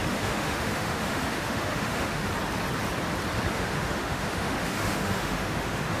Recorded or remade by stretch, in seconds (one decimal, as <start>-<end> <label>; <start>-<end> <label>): 0.0-2.3 remade; 2.3-3.5 recorded; 3.5-6.0 remade